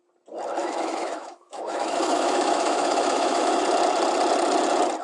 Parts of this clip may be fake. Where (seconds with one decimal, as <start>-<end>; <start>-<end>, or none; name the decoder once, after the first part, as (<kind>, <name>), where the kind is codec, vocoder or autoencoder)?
0.6-3.6 (autoencoder, DAC-VAE)

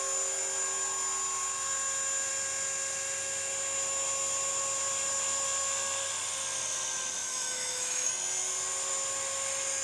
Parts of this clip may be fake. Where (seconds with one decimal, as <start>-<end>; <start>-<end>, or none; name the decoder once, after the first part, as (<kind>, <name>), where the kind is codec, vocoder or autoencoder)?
7.2-8.1 (autoencoder, DAC-VAE)

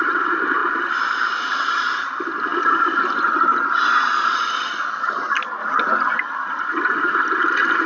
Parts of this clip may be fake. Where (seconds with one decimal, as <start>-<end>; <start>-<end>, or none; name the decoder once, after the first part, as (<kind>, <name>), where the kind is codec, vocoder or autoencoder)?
none

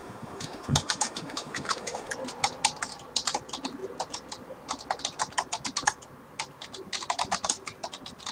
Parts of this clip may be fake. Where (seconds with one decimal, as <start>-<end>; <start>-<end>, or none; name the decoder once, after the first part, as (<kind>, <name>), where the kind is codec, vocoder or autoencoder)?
0.0-2.1 (autoencoder, DAC-VAE)